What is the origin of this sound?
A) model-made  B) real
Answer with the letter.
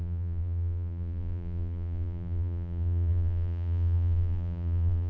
A